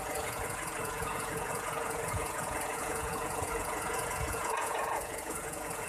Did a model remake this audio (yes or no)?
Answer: yes